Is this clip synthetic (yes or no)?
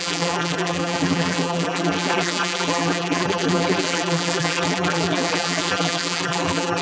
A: yes